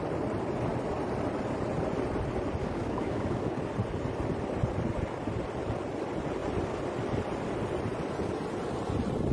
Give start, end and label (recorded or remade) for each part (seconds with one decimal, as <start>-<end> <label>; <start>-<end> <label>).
0.0-2.6 recorded; 2.6-3.6 remade; 3.6-9.3 recorded